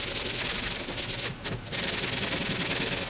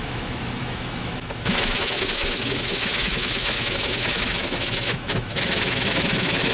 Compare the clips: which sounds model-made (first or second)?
second